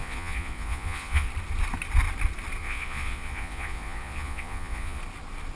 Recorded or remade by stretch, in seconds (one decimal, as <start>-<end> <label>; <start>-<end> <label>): 0.0-1.3 remade; 1.3-2.6 recorded; 2.6-5.0 remade; 5.0-5.6 recorded